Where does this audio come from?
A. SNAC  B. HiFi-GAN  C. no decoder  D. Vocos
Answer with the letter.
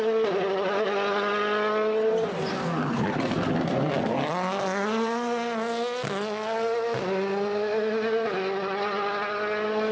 C